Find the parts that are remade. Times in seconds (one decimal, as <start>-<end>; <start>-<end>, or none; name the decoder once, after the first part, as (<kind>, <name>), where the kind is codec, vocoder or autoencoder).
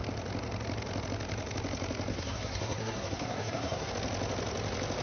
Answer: 2.1-3.9 (codec, SNAC)